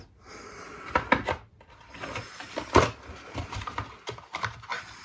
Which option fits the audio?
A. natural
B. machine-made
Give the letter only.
A